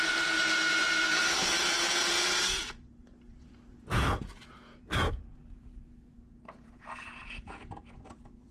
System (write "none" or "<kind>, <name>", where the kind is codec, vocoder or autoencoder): vocoder, Vocos